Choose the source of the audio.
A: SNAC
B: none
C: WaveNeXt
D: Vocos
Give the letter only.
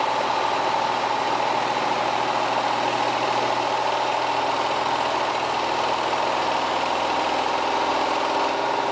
B